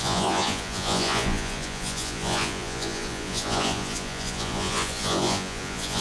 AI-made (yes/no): yes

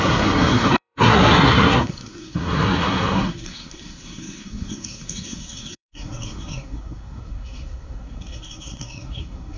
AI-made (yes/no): yes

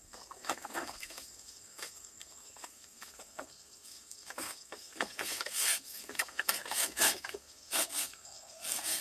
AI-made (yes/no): yes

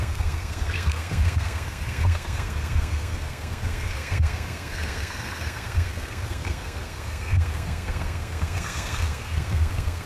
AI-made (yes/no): yes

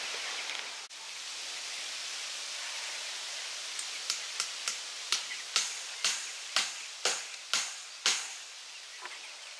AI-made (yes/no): no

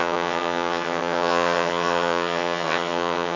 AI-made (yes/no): yes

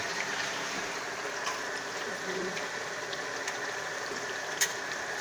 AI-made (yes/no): yes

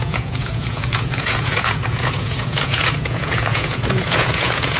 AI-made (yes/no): yes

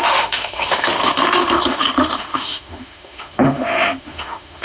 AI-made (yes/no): yes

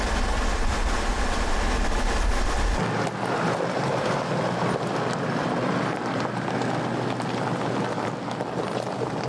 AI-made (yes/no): no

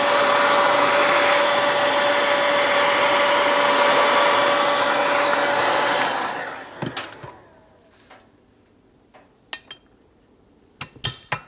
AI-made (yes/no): no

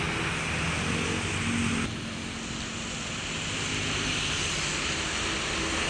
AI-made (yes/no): no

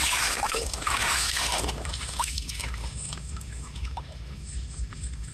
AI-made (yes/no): yes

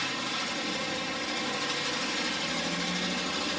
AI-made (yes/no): no